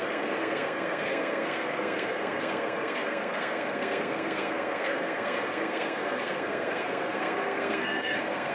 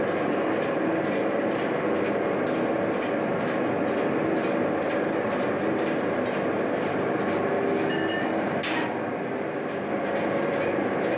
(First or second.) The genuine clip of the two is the second